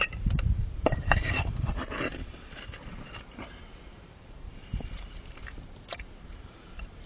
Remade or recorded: remade